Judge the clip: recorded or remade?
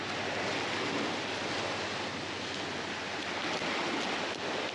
recorded